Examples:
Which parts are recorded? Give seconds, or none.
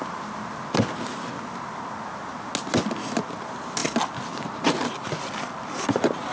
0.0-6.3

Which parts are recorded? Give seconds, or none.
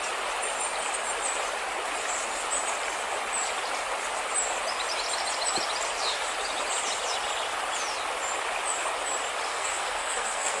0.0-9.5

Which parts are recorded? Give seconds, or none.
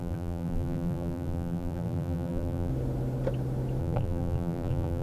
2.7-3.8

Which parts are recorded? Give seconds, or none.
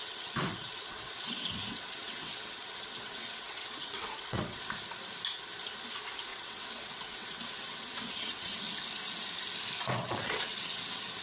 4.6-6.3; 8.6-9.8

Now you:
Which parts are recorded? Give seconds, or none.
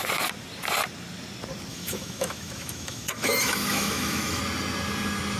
0.0-1.7; 4.4-5.4